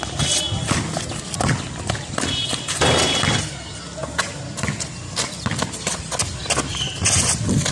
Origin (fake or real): real